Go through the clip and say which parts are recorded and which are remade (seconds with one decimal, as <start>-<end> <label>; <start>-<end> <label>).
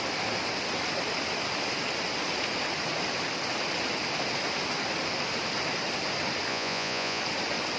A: 0.0-6.5 recorded; 6.5-7.2 remade; 7.2-7.8 recorded